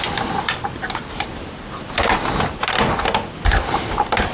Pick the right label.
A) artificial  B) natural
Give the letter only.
A